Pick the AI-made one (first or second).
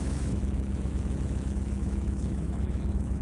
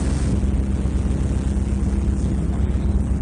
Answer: first